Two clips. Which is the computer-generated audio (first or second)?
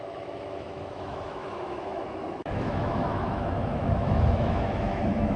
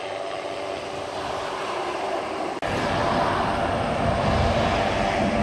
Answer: first